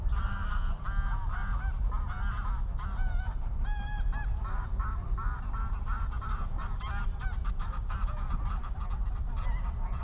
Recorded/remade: recorded